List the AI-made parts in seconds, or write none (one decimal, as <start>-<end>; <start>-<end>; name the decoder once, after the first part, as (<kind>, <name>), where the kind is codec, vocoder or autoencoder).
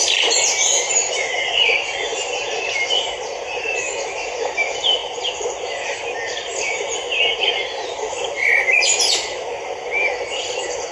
none